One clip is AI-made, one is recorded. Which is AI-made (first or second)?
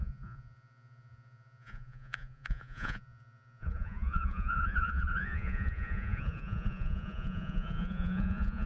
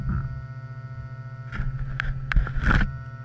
first